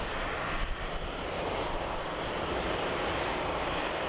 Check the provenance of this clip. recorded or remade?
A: recorded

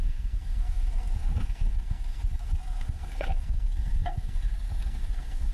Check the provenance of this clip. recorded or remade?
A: remade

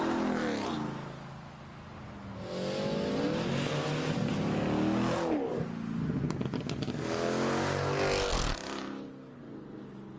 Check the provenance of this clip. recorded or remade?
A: recorded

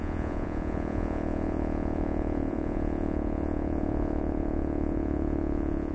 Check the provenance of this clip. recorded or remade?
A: remade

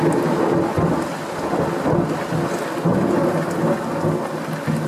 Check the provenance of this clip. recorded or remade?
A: recorded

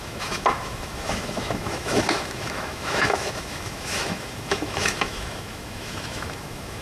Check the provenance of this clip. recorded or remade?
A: remade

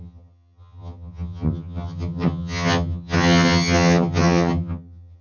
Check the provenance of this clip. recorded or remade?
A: remade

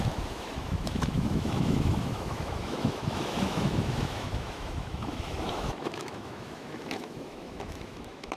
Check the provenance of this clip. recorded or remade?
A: remade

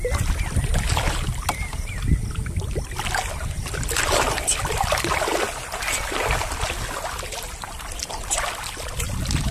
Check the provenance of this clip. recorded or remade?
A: recorded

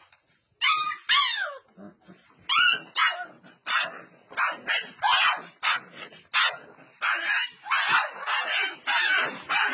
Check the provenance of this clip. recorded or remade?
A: recorded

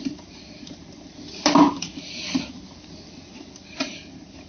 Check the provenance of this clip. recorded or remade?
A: remade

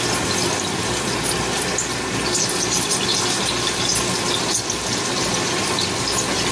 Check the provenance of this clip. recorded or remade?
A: recorded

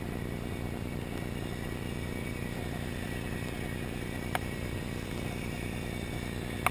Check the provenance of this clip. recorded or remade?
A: recorded